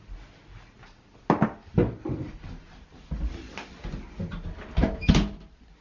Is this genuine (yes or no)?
yes